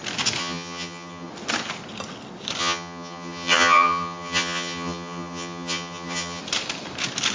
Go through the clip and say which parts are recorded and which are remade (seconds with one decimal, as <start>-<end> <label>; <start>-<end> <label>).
0.0-0.4 recorded; 0.4-1.3 remade; 1.3-2.6 recorded; 2.6-6.4 remade; 6.4-7.3 recorded